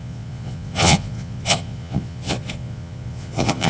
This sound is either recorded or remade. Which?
remade